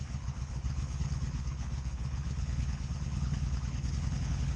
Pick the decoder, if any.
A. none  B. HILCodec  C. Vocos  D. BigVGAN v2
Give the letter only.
B